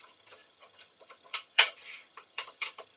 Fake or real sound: fake